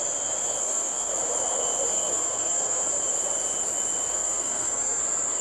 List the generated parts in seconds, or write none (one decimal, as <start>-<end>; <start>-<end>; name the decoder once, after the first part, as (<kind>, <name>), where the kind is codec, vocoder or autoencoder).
0.6-1.1 (codec, SNAC); 1.9-2.9; 4.1-5.0